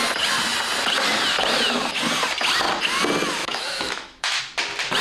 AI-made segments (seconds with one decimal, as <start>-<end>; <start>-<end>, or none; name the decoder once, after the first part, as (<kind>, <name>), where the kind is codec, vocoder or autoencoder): 3.4-4.4 (autoencoder, DAC-VAE)